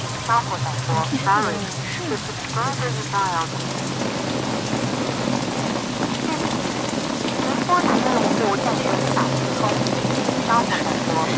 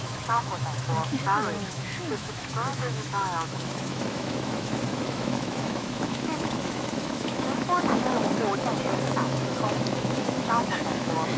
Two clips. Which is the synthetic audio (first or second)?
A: second